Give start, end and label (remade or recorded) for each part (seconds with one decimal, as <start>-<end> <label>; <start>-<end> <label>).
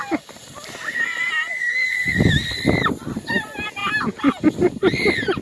0.0-3.8 remade; 3.8-4.5 recorded; 4.5-5.4 remade